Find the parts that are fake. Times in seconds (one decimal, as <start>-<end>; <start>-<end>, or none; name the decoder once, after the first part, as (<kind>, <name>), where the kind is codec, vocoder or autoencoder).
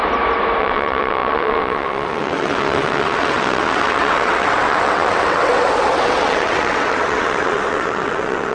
0.6-8.5 (vocoder, WaveNeXt)